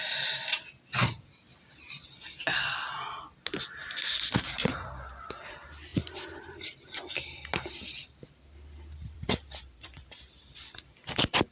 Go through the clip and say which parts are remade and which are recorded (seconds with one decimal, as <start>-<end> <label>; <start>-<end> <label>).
0.0-2.0 remade; 2.0-5.5 recorded; 5.5-5.9 remade; 5.9-7.7 recorded; 7.7-11.5 remade

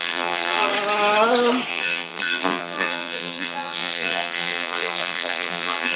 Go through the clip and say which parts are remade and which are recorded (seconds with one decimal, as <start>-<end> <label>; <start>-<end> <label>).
0.0-0.7 remade; 0.7-1.7 recorded; 1.7-6.0 remade

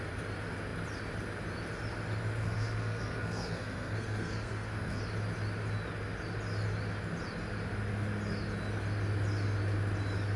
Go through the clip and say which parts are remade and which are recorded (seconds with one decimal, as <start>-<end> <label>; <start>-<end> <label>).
0.0-2.4 recorded; 2.4-5.0 remade; 5.0-10.4 recorded

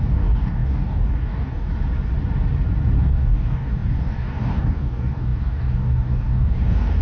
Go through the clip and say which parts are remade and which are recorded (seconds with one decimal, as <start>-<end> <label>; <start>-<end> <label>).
0.0-1.7 remade; 1.7-3.0 recorded; 3.0-7.0 remade

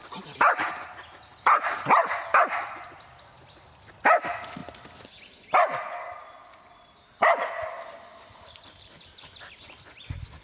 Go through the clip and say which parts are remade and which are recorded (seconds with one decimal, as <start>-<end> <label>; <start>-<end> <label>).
0.0-10.4 recorded

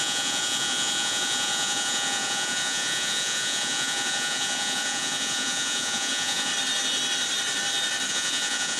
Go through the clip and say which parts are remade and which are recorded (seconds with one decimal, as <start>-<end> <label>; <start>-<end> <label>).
0.0-6.5 remade; 6.5-8.1 recorded; 8.1-8.8 remade

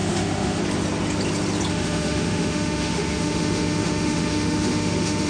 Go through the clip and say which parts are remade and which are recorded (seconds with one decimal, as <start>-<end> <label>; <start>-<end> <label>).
0.0-0.6 remade; 0.6-1.7 recorded; 1.7-5.3 remade

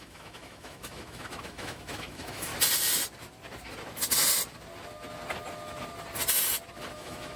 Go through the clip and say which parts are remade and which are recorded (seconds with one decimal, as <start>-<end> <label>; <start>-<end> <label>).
0.0-2.5 remade; 2.5-6.9 recorded; 6.9-7.4 remade